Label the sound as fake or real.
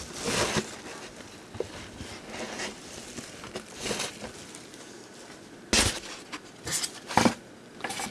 real